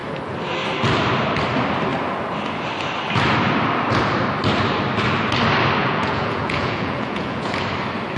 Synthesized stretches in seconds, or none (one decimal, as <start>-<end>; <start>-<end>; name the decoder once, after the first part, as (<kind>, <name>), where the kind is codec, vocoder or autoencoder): 5.8-7.5 (vocoder, Vocos)